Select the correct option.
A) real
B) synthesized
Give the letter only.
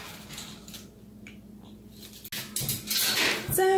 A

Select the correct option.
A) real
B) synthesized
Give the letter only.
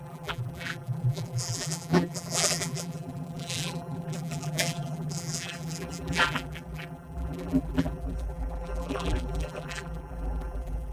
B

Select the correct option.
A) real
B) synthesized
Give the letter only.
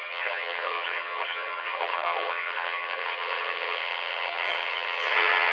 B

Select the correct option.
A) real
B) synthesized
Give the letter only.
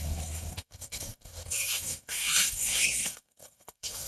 B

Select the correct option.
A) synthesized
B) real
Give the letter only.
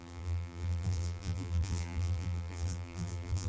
A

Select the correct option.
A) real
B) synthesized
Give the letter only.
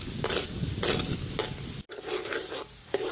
A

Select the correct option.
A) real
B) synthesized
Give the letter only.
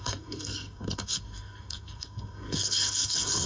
B